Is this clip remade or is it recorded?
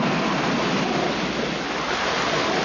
recorded